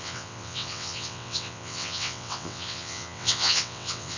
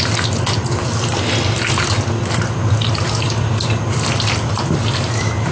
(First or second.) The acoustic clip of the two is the second